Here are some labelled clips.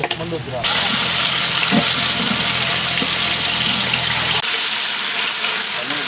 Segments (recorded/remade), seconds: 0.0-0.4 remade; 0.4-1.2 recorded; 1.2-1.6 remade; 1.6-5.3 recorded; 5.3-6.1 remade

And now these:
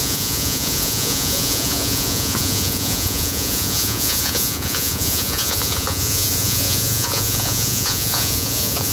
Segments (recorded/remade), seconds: 0.0-8.9 remade

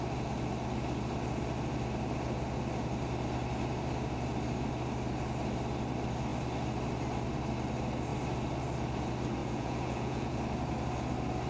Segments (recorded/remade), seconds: 0.0-9.4 recorded; 9.4-10.4 remade; 10.4-11.5 recorded

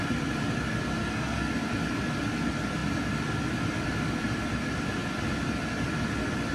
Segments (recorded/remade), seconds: 0.0-1.0 recorded; 1.0-1.5 remade; 1.5-6.5 recorded